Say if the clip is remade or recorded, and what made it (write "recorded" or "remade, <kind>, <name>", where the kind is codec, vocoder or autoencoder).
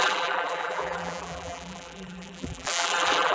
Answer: remade, vocoder, BigVGAN v2